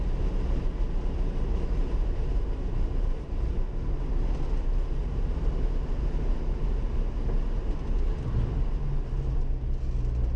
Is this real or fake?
real